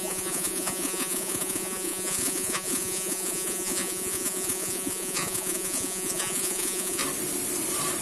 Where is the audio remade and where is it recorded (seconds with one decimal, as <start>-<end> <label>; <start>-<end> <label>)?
0.0-7.0 remade; 7.0-8.0 recorded